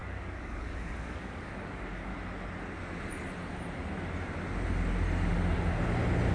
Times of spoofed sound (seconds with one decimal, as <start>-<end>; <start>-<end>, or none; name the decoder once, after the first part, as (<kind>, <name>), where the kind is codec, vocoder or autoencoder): 0.0-2.1 (codec, DAC)